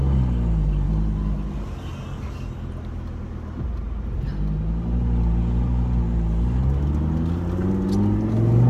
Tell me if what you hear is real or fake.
real